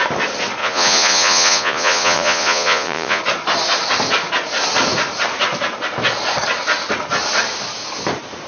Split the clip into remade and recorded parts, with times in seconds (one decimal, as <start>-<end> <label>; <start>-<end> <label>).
0.0-0.6 recorded; 0.6-3.2 remade; 3.2-8.5 recorded